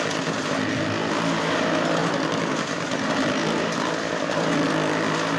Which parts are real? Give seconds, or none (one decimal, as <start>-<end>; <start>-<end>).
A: 0.0-5.4